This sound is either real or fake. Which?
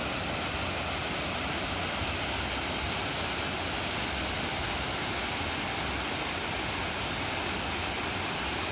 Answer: real